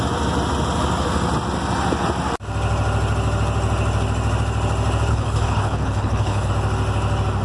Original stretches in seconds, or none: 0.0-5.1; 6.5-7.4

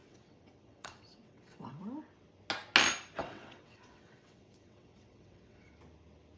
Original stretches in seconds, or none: 1.8-3.2; 5.7-6.4

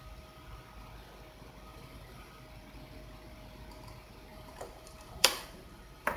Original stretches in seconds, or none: 0.0-1.7; 2.3-4.3

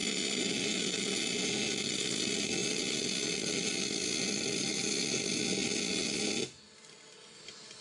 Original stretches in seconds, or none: 0.0-7.8

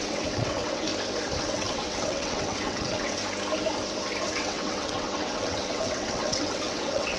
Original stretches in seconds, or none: 0.9-1.4; 3.2-4.2

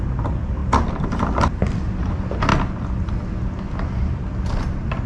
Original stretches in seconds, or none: 0.0-5.1